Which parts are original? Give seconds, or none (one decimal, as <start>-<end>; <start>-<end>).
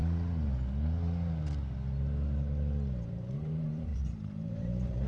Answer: 0.0-3.1; 3.9-4.5